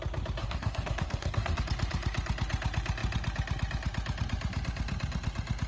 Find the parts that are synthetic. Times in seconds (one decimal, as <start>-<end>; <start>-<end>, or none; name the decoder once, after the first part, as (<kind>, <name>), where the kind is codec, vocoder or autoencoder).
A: 0.4-1.6 (codec, SNAC)